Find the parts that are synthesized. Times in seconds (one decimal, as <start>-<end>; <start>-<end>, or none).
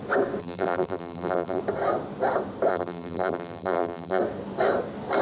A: 0.4-1.6; 2.7-4.2